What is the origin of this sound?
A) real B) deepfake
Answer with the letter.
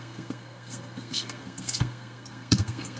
B